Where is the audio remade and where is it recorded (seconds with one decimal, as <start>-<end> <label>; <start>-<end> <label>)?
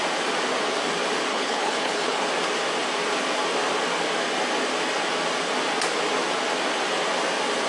0.0-1.3 recorded; 1.3-2.3 remade; 2.3-7.7 recorded